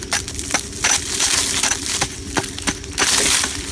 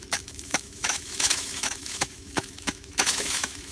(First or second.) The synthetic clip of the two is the second